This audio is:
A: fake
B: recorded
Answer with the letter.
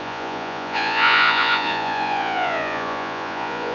A